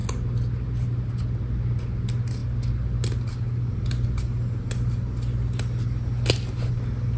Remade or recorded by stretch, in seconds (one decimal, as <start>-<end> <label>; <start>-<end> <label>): 0.0-7.2 recorded